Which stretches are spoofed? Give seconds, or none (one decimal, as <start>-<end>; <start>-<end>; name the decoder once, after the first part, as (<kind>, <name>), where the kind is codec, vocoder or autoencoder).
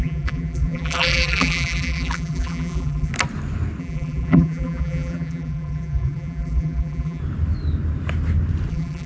0.0-3.1 (vocoder, BigVGAN v2); 3.8-7.2; 8.7-9.1